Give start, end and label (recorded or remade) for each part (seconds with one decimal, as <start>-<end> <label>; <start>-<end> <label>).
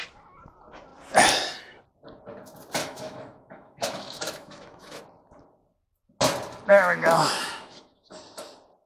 0.0-2.8 recorded; 2.8-5.0 remade; 5.0-6.7 recorded; 6.7-8.2 remade; 8.2-8.9 recorded